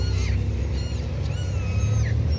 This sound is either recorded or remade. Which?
recorded